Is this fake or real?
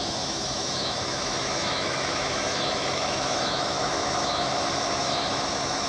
fake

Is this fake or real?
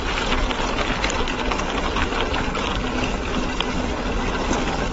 real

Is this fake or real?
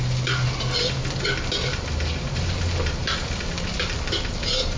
real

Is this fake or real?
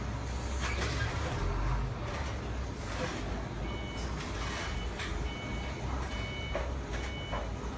real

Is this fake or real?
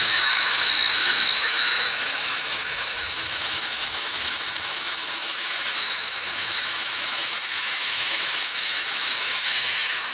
fake